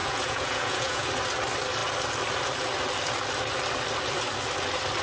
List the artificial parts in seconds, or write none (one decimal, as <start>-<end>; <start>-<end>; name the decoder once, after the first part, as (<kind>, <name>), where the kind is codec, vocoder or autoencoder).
0.0-1.1 (vocoder, Vocos)